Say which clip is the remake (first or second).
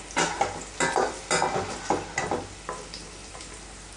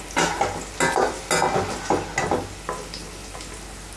first